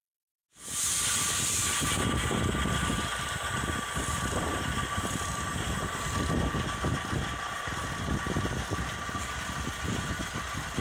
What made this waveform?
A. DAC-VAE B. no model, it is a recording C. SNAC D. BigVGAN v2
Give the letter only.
B